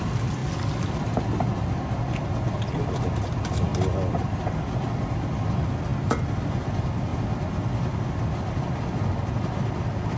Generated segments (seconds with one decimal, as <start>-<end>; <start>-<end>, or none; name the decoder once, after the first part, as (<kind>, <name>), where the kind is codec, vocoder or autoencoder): 3.7-4.3 (vocoder, BigVGAN v2)